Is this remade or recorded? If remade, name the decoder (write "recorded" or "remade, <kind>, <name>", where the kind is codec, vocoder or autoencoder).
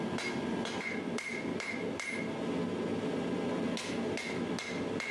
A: recorded